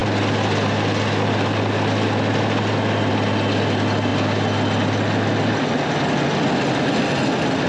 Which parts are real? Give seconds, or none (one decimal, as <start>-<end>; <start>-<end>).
0.0-7.7